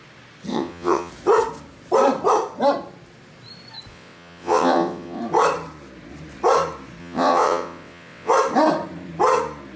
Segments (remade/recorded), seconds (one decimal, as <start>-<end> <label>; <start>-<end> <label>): 0.0-0.5 recorded; 0.5-1.1 remade; 1.1-3.9 recorded; 3.9-5.2 remade; 5.2-7.0 recorded; 7.0-8.3 remade; 8.3-9.8 recorded